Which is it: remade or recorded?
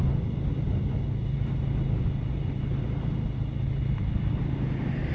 recorded